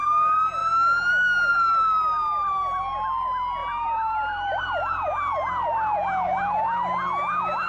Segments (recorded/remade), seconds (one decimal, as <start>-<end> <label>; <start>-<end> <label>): 0.0-1.5 recorded; 1.5-2.8 remade; 2.8-3.6 recorded; 3.6-4.6 remade; 4.6-7.7 recorded